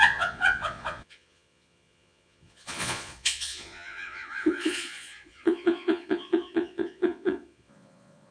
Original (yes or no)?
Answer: no